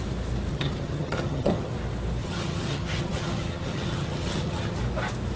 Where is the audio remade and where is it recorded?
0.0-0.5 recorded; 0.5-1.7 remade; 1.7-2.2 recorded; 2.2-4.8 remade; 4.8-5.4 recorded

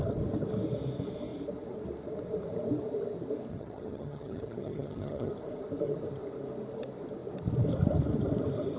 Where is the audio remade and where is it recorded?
0.0-3.5 recorded; 3.5-5.3 remade; 5.3-8.8 recorded

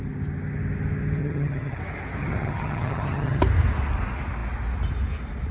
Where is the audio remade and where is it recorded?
0.0-1.2 recorded; 1.2-1.8 remade; 1.8-2.2 recorded; 2.2-3.4 remade; 3.4-5.5 recorded